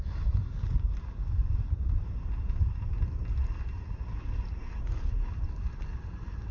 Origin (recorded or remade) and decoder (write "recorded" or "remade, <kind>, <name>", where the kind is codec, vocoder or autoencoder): recorded